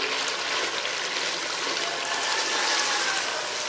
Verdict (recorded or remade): recorded